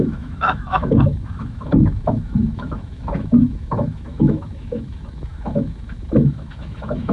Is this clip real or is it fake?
fake